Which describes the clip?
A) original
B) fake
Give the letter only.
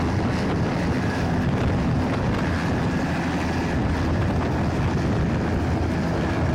A